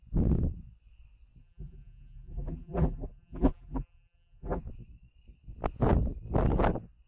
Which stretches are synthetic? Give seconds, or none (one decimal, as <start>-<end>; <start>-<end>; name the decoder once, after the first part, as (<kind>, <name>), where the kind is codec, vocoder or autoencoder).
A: 1.4-4.6 (vocoder, BigVGAN v2)